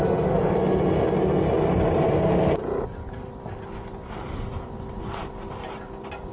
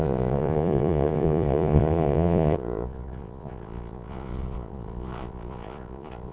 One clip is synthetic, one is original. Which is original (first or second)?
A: first